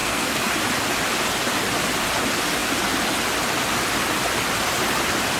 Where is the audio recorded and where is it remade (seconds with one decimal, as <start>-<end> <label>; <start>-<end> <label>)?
0.0-0.5 remade; 0.5-5.4 recorded